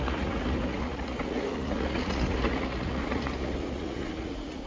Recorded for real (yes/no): no